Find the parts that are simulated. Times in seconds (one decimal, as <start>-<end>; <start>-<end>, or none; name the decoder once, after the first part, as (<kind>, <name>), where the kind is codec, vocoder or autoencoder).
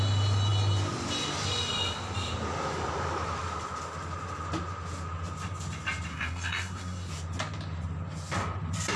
6.1-7.1 (codec, SNAC)